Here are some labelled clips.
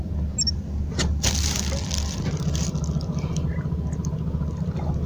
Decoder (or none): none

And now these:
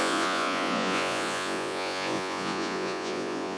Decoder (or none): vocoder, Vocos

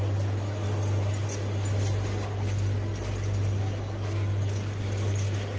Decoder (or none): none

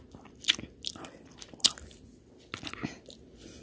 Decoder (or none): none